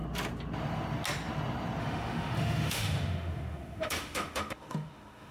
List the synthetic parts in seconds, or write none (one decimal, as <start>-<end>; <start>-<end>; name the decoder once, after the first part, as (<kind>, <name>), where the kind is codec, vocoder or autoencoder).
1.8-5.3 (autoencoder, DAC-VAE)